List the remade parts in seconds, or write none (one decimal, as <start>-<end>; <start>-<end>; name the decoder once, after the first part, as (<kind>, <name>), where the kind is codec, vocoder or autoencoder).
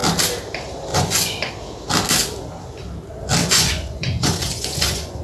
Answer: 0.9-1.5 (vocoder, Vocos); 3.4-5.2